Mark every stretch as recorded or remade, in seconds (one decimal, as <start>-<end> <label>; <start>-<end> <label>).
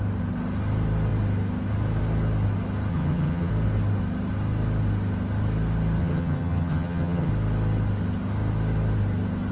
0.0-2.9 recorded; 2.9-3.5 remade; 3.5-6.0 recorded; 6.0-7.3 remade; 7.3-9.5 recorded